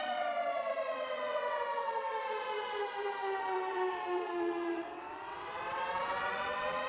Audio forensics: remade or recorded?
remade